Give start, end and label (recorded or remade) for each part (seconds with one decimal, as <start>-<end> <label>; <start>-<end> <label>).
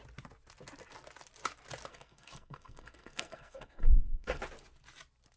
0.0-1.9 recorded; 1.9-4.4 remade; 4.4-5.4 recorded